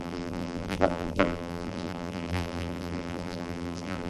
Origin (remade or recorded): remade